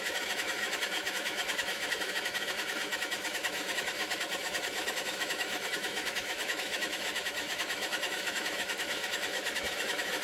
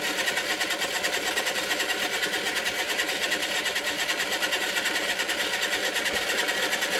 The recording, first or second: second